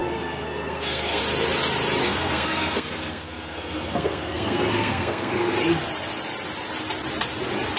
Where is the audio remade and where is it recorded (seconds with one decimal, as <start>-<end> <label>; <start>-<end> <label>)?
0.0-1.2 remade; 1.2-2.0 recorded; 2.0-5.5 remade; 5.5-7.8 recorded